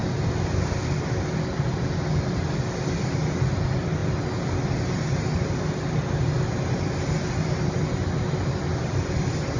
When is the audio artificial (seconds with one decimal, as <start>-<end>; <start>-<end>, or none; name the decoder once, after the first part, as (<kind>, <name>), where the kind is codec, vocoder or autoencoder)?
none